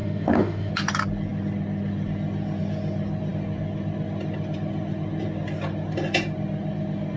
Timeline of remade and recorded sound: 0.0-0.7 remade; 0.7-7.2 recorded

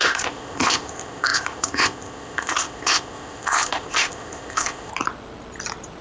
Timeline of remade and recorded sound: 0.0-4.9 remade; 4.9-6.0 recorded

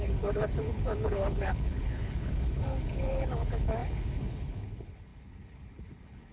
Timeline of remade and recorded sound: 0.0-6.3 remade

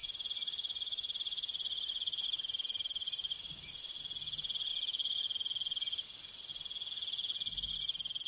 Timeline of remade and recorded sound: 0.0-4.0 remade; 4.0-8.3 recorded